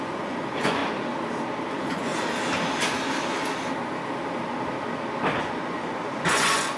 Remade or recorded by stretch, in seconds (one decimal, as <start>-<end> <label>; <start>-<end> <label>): 0.0-0.8 remade; 0.8-1.7 recorded; 1.7-2.1 remade; 2.1-5.4 recorded; 5.4-6.8 remade